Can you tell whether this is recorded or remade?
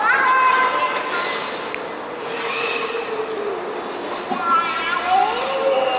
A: recorded